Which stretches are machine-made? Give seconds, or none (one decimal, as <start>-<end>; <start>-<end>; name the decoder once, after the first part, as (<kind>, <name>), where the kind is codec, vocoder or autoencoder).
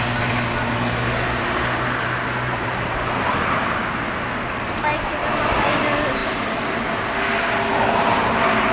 none